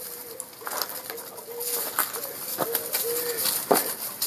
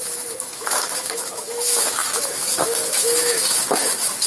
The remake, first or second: second